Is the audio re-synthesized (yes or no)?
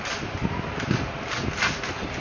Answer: no